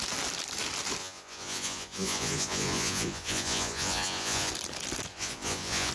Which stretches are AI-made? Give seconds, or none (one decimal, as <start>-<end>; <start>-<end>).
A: 1.0-4.5; 5.1-5.9